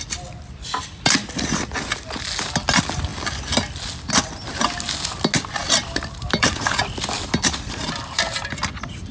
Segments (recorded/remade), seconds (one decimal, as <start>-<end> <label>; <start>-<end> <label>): 0.0-5.6 recorded; 5.6-8.5 remade; 8.5-9.1 recorded